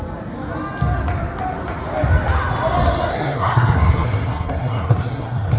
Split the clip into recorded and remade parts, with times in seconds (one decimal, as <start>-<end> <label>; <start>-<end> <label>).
0.0-3.1 recorded; 3.1-5.6 remade